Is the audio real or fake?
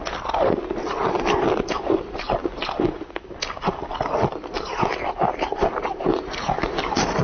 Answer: real